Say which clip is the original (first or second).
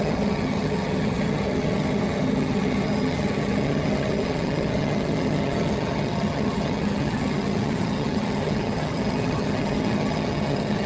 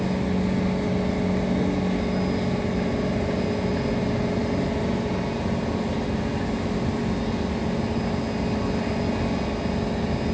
second